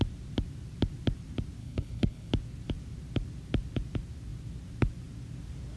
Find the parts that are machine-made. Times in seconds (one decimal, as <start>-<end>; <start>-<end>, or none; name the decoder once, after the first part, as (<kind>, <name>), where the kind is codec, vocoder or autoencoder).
1.6-2.3 (codec, HILCodec)